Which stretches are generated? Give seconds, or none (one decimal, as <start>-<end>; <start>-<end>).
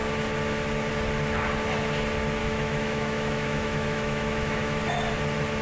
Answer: 2.4-4.8